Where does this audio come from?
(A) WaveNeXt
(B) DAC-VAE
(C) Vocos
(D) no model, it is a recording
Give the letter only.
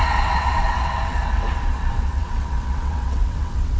A